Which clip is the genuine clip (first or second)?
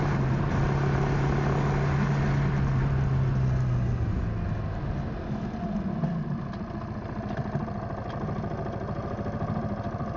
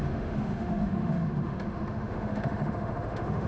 first